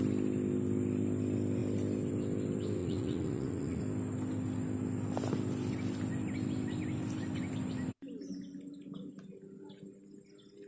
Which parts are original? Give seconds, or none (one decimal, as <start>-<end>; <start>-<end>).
0.0-2.8; 3.8-10.7